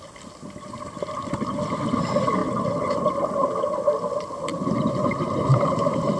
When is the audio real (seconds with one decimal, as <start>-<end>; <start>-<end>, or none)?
0.0-4.5; 5.1-5.5